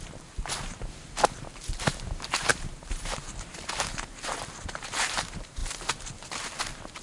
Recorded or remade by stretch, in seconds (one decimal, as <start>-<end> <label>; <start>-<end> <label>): 0.0-5.6 remade; 5.6-6.6 recorded; 6.6-7.0 remade